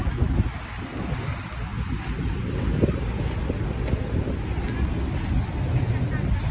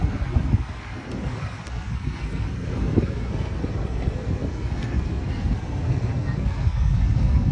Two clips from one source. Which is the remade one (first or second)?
second